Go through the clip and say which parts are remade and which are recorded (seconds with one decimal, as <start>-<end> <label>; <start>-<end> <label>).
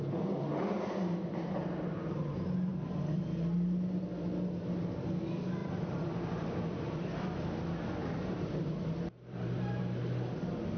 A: 0.0-2.7 recorded; 2.7-3.2 remade; 3.2-5.6 recorded; 5.6-7.0 remade; 7.0-8.0 recorded; 8.0-9.8 remade; 9.8-10.8 recorded